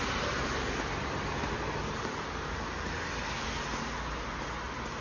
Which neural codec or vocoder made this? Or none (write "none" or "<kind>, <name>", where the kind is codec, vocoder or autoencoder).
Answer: none